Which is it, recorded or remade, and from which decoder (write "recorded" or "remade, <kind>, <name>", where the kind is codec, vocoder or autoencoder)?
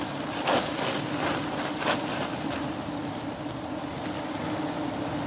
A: recorded